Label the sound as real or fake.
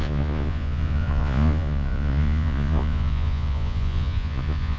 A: fake